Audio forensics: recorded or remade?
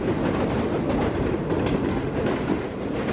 recorded